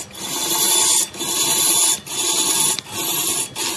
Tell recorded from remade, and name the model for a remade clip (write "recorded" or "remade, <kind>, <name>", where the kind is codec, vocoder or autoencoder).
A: recorded